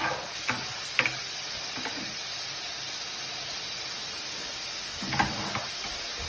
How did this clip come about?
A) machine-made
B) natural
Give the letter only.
B